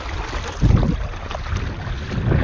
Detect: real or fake real